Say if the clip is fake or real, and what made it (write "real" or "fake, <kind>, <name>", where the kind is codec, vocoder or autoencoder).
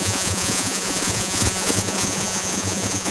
fake, vocoder, Vocos